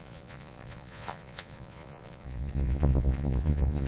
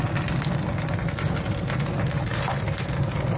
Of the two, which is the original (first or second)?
second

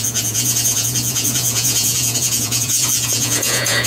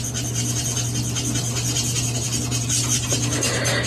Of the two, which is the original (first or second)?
second